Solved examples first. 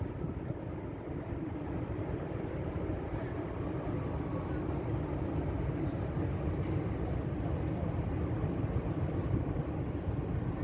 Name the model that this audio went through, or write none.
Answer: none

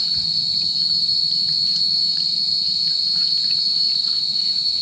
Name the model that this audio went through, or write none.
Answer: vocoder, BigVGAN v2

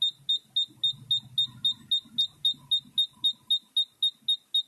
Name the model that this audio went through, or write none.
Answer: none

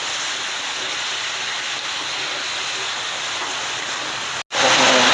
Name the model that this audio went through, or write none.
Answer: none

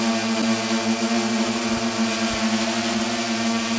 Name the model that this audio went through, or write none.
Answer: none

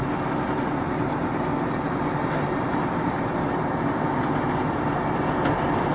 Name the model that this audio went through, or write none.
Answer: vocoder, BigVGAN v2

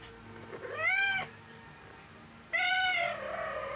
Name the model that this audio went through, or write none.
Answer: vocoder, BigVGAN v2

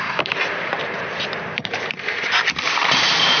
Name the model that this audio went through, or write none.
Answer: vocoder, BigVGAN v2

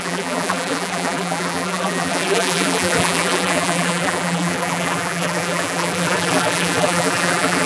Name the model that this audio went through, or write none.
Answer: vocoder, BigVGAN v2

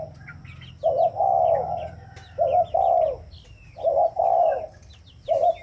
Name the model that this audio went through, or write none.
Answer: none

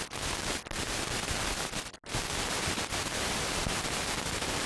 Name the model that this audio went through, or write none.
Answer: none